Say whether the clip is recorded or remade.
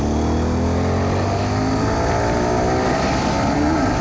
recorded